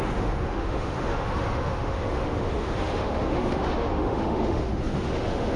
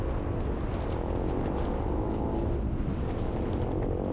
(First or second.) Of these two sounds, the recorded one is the second